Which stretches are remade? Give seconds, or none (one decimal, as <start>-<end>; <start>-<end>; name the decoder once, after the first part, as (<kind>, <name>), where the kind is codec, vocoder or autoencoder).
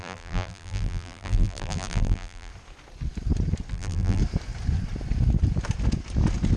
0.0-2.5 (vocoder, BigVGAN v2); 3.7-4.2